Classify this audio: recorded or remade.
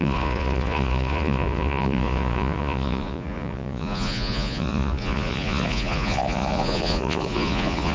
remade